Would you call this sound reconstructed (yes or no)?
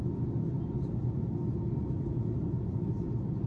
no